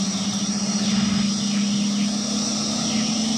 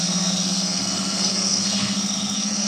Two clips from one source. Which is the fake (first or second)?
second